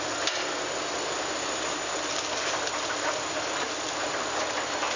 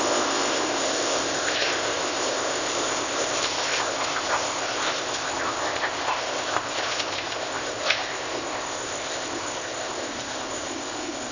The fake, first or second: second